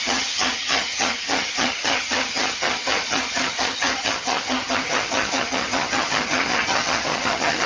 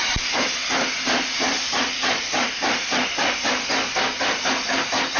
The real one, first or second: second